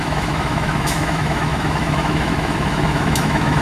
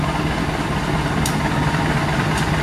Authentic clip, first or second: second